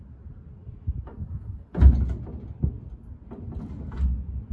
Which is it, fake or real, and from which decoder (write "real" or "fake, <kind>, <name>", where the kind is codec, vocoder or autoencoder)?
real